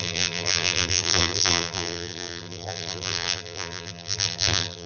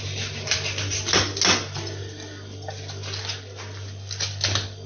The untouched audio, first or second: second